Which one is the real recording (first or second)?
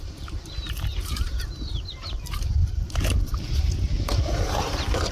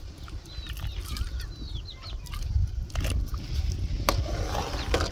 second